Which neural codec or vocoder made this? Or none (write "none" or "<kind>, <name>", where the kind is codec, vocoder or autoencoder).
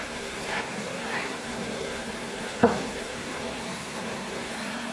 codec, SNAC